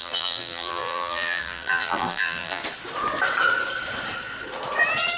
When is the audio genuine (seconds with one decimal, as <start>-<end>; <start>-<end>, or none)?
2.6-5.2

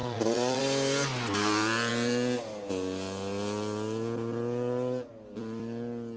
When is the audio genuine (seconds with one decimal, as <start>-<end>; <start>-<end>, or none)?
0.6-6.2

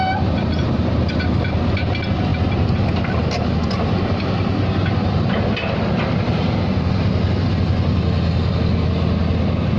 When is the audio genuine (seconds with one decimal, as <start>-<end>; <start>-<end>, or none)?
0.0-9.8

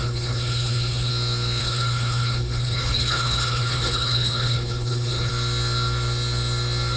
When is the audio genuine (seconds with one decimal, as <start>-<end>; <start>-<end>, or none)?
1.1-1.6; 5.3-7.0

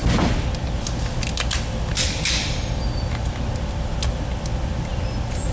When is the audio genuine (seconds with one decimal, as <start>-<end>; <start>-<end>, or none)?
0.0-5.5